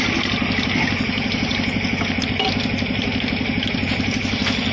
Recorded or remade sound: recorded